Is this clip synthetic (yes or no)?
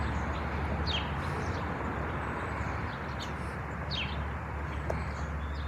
no